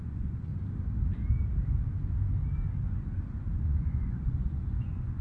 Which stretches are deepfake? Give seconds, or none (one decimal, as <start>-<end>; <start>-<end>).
0.0-0.5; 3.6-5.2